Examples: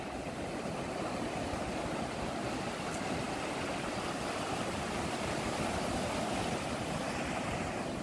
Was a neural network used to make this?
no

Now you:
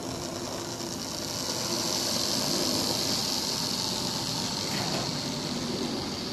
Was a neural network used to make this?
no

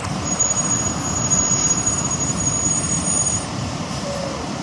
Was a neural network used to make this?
yes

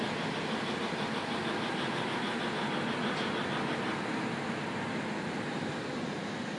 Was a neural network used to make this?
no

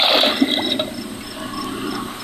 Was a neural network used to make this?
no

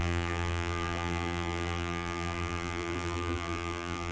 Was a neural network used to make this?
yes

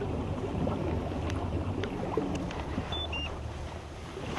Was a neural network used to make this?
yes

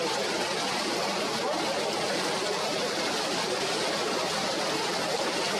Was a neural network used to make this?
no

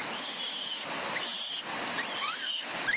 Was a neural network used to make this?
no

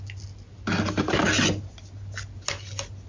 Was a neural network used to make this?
no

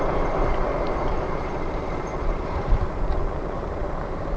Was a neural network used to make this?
yes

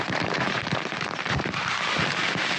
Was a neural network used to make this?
yes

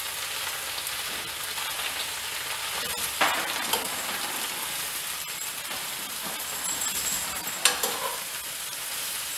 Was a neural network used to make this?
no